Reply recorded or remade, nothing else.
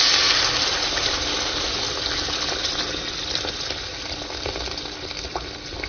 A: recorded